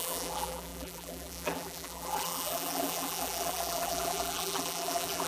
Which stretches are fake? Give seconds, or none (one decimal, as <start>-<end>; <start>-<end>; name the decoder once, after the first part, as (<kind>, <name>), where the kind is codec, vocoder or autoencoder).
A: 0.0-5.3 (vocoder, BigVGAN v2)